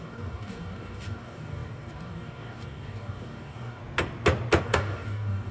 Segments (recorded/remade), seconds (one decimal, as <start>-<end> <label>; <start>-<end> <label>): 0.0-3.8 remade; 3.8-4.6 recorded; 4.6-5.5 remade